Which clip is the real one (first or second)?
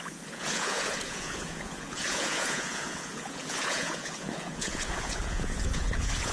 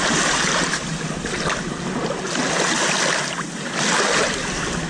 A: second